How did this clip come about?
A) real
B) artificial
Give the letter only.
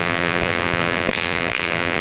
B